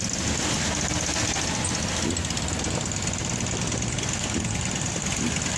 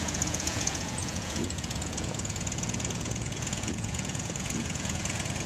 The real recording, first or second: first